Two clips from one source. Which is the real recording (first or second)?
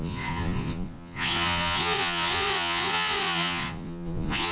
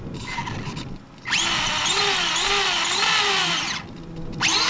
second